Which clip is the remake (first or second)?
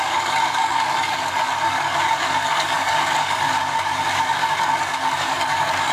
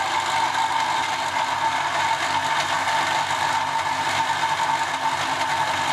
first